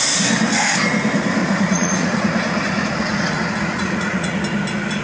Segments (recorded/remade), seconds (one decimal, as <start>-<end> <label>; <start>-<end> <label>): 0.0-1.4 recorded; 1.4-4.4 remade; 4.4-5.0 recorded